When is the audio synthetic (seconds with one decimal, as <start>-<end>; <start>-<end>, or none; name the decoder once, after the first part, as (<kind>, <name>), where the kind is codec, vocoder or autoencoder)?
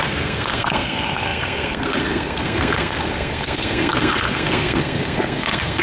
0.0-5.8 (codec, SNAC)